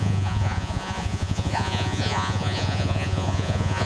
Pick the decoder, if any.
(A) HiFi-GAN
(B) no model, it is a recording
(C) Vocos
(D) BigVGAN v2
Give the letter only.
C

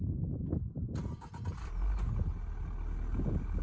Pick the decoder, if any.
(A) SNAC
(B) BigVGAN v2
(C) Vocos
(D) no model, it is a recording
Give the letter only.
D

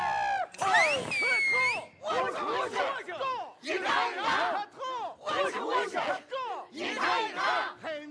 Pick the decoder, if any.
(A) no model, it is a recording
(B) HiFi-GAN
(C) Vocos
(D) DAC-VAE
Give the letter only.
A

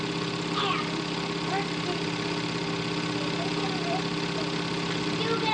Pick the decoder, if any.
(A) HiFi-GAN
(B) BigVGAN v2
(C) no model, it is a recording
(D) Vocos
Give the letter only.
C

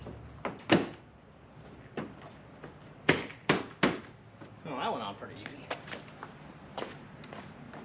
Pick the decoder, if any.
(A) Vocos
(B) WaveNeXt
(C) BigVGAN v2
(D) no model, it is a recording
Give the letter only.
D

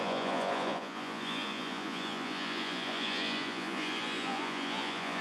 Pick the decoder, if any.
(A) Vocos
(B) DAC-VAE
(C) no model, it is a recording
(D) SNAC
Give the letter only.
A